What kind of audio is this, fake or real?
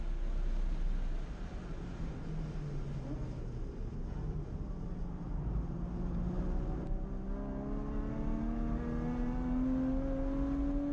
real